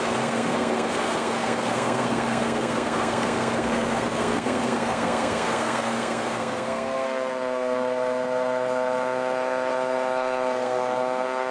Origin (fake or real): fake